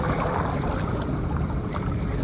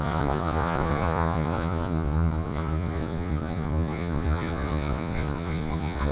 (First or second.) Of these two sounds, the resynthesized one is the second